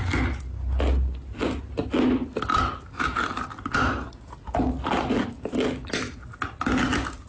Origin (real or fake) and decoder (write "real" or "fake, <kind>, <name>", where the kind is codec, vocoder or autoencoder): real